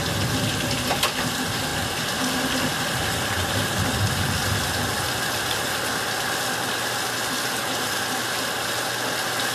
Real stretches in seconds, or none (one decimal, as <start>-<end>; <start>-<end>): 0.0-9.5